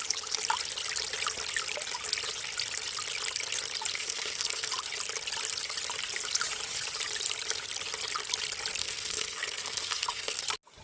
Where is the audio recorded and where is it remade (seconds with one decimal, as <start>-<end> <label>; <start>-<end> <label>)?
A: 0.0-3.9 recorded; 3.9-4.7 remade; 4.7-8.8 recorded; 8.8-10.4 remade; 10.4-10.8 recorded